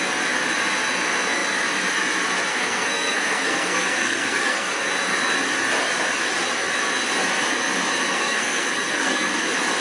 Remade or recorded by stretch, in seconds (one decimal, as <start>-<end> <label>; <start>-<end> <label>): 0.0-2.5 recorded; 2.5-4.9 remade; 4.9-8.1 recorded; 8.1-9.4 remade; 9.4-9.8 recorded